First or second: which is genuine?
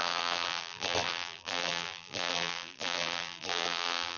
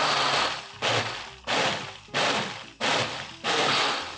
second